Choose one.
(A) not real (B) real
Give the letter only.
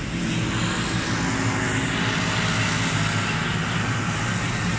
B